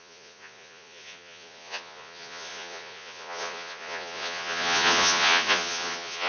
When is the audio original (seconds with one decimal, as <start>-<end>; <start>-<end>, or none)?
none